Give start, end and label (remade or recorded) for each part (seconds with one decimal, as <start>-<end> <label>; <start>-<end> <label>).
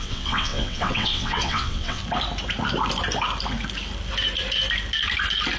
0.0-2.0 remade; 2.0-5.6 recorded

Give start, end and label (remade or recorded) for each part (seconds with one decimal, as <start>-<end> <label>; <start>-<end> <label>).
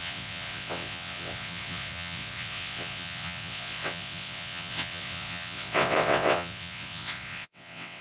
0.0-8.0 remade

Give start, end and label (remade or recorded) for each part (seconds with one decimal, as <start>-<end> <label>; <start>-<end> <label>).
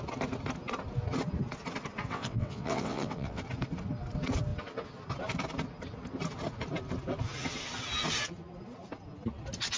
0.0-2.1 recorded; 2.1-3.4 remade; 3.4-9.8 recorded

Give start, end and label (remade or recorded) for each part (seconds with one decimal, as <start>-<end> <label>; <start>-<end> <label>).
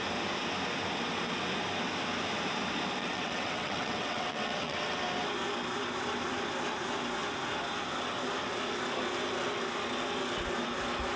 0.0-3.0 recorded; 3.0-5.0 remade; 5.0-11.2 recorded